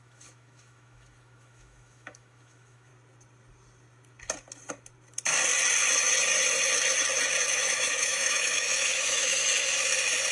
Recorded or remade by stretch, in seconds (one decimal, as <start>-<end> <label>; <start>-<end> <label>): 0.0-2.9 remade; 2.9-7.5 recorded; 7.5-9.4 remade; 9.4-10.3 recorded